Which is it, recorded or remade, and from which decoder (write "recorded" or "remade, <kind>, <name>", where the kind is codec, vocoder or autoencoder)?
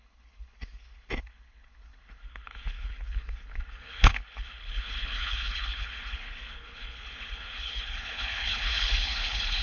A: remade, codec, HILCodec